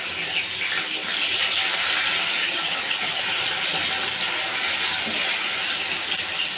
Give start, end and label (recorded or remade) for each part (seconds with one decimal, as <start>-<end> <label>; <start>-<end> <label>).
0.0-2.4 recorded; 2.4-3.2 remade; 3.2-6.6 recorded